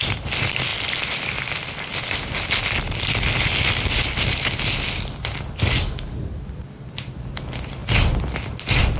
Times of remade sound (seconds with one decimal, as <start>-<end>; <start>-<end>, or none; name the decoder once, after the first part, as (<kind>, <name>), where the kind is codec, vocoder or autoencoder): none